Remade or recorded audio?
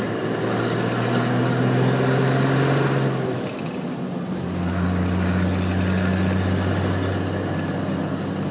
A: recorded